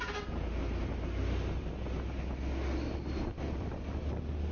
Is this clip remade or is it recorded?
recorded